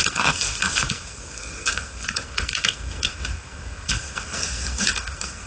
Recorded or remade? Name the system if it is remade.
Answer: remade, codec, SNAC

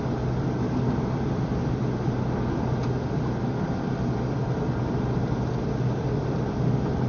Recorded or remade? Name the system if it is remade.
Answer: recorded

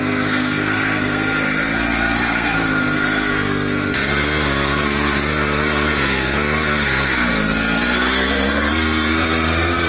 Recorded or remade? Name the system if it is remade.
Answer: remade, codec, SNAC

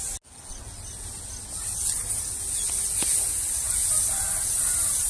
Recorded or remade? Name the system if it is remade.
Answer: recorded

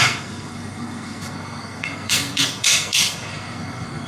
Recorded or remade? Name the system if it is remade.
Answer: remade, codec, SNAC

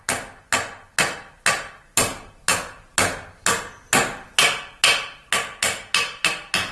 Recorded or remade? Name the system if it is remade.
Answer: recorded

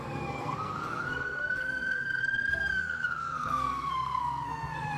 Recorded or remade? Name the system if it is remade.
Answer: remade, codec, SNAC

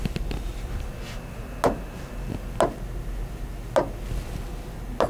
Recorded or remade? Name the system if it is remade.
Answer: recorded